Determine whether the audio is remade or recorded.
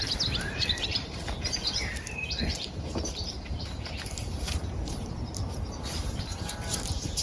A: remade